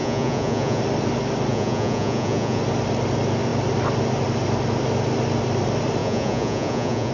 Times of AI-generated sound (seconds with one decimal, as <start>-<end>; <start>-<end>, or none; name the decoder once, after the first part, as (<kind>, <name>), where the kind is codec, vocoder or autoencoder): 0.0-0.8 (vocoder, Vocos); 1.5-2.6; 6.0-7.1